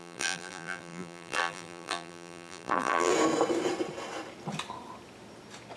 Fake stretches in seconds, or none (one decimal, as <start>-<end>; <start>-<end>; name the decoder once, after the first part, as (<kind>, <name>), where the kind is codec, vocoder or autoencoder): 0.0-3.1 (vocoder, BigVGAN v2)